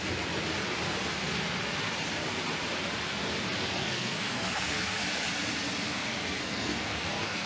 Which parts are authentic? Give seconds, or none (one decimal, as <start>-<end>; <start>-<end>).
0.0-3.8; 5.0-5.9